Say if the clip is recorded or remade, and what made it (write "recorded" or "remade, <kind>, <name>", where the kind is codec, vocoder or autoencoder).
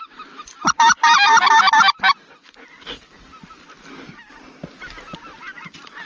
recorded